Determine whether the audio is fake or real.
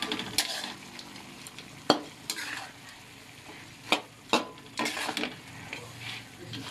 real